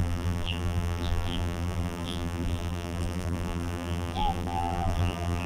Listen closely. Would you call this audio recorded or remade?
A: remade